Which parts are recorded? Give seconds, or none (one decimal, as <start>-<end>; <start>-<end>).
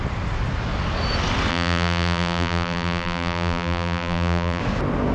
0.0-1.5; 4.6-5.1